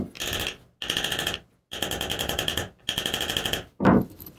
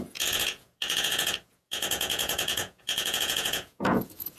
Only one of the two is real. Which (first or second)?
first